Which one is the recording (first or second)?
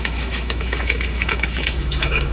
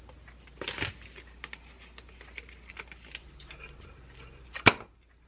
second